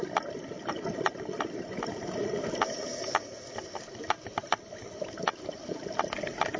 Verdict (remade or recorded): recorded